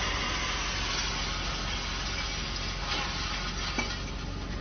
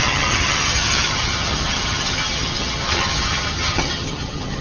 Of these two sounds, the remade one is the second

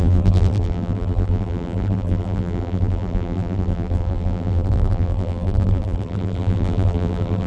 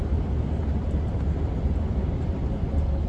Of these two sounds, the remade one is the first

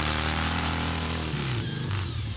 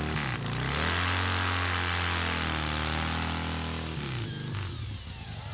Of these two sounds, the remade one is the first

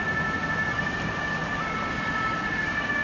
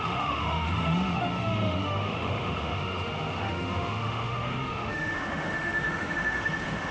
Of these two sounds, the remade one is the second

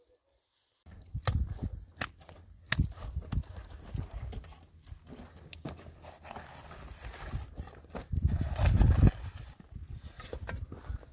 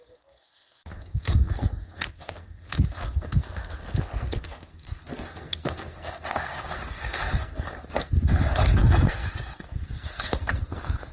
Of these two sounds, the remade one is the second